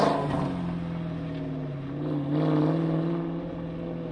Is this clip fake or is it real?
real